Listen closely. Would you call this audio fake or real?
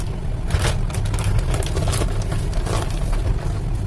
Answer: real